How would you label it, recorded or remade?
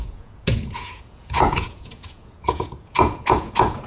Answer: remade